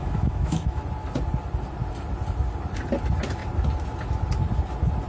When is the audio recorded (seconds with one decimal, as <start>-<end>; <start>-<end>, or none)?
0.8-5.1